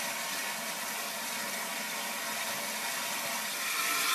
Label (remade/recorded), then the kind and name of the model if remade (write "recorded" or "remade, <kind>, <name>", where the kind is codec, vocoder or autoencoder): recorded